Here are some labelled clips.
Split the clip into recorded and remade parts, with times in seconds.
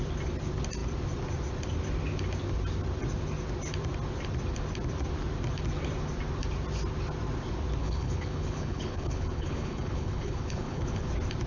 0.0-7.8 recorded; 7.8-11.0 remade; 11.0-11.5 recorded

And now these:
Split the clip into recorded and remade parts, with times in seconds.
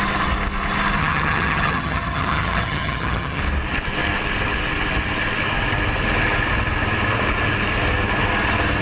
0.0-1.0 recorded; 1.0-3.4 remade; 3.4-8.8 recorded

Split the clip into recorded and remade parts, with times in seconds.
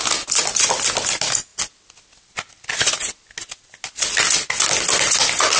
0.0-5.6 recorded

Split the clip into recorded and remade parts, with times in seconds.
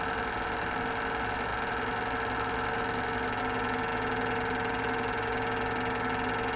0.0-6.6 recorded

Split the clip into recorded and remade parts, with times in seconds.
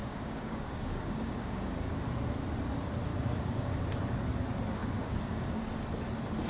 0.0-2.1 remade; 2.1-3.1 recorded; 3.1-3.7 remade; 3.7-4.8 recorded; 4.8-5.6 remade; 5.6-6.5 recorded